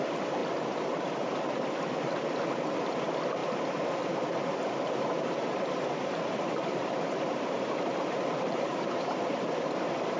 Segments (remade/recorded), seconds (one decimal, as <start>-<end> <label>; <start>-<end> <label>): 0.0-3.4 recorded; 3.4-3.9 remade; 3.9-5.4 recorded; 5.4-9.0 remade; 9.0-10.2 recorded